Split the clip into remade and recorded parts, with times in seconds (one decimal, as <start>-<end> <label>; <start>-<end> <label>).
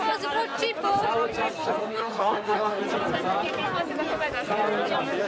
0.0-1.8 recorded; 1.8-2.8 remade; 2.8-5.3 recorded